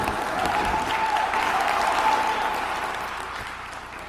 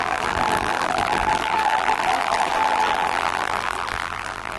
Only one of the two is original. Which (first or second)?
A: first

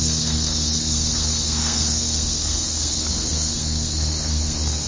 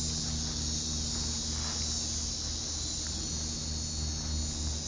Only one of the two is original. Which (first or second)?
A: second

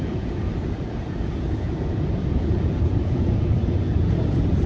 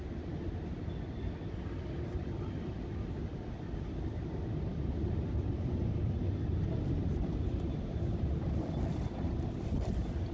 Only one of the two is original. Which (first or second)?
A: second